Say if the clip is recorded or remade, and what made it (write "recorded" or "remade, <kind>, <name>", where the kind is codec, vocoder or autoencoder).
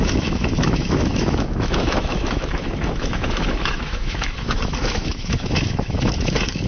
remade, autoencoder, DAC-VAE